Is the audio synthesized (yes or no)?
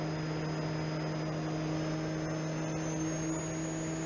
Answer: no